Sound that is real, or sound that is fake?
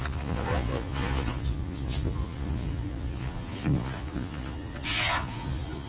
fake